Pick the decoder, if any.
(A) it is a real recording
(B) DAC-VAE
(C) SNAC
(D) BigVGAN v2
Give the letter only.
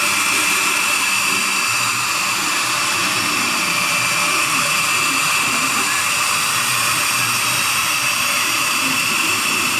A